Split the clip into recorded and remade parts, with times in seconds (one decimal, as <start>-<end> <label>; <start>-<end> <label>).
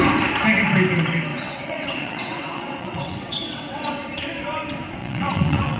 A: 0.0-1.3 recorded; 1.3-3.9 remade; 3.9-5.0 recorded; 5.0-5.8 remade